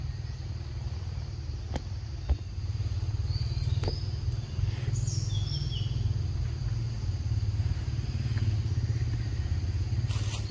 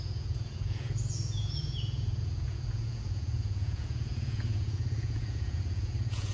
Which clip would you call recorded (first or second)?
first